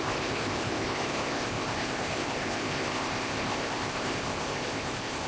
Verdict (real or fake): fake